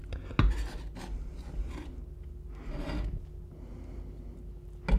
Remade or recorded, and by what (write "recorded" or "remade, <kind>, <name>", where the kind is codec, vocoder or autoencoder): recorded